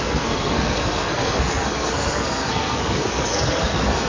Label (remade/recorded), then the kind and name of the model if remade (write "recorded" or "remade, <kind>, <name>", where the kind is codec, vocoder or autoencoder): remade, codec, SNAC